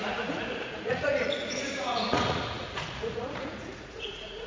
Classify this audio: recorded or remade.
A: remade